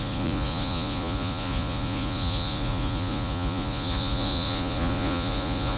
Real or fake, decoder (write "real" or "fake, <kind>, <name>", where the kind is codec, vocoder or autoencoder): fake, vocoder, Vocos